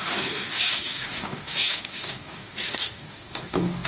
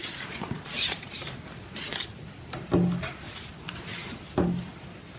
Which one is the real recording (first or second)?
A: second